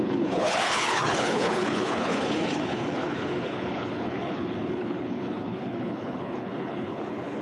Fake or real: fake